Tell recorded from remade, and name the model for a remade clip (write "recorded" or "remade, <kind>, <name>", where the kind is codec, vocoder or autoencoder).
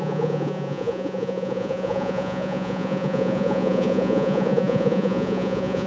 remade, vocoder, Vocos